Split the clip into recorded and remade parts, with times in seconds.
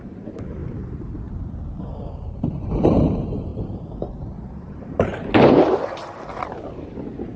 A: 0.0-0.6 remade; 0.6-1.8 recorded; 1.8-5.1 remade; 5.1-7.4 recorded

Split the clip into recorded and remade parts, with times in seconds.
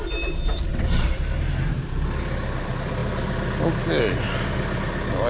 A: 0.0-5.3 recorded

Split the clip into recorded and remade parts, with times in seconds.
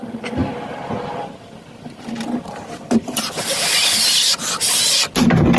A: 0.0-5.6 recorded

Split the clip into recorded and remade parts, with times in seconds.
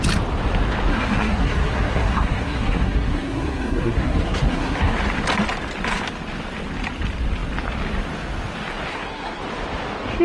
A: 0.0-0.9 recorded; 0.9-5.0 remade; 5.0-8.9 recorded; 8.9-9.4 remade; 9.4-10.2 recorded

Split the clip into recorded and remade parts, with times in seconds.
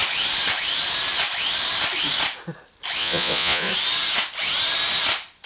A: 0.0-3.0 recorded; 3.0-3.7 remade; 3.7-5.5 recorded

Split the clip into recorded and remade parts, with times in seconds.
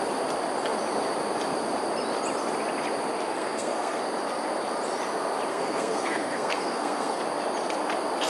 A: 0.0-3.3 recorded; 3.3-4.0 remade; 4.0-5.5 recorded; 5.5-7.2 remade; 7.2-8.3 recorded